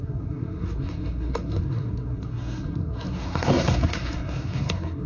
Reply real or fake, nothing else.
fake